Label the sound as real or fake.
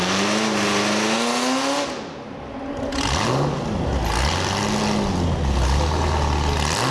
real